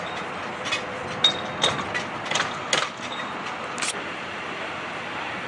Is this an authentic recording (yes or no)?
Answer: yes